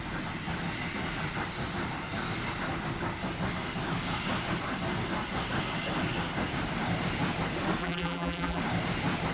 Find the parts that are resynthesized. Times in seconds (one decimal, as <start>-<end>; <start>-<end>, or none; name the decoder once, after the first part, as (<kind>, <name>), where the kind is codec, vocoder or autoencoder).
7.8-8.6 (vocoder, BigVGAN v2)